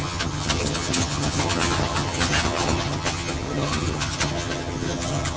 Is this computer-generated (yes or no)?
yes